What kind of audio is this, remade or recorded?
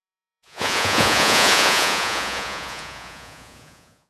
remade